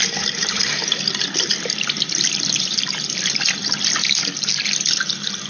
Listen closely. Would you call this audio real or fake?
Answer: real